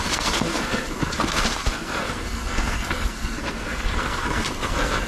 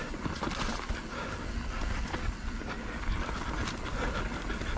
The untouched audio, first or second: second